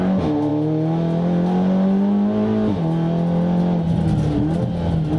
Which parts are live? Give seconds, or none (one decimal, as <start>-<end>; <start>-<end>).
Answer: 0.0-5.2